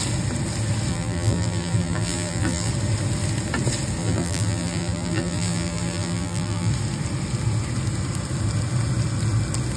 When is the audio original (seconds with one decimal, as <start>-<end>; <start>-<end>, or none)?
0.0-0.9; 2.7-4.0; 6.7-9.8